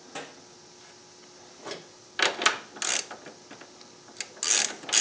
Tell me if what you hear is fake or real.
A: real